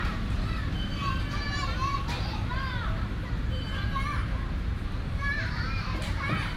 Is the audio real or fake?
fake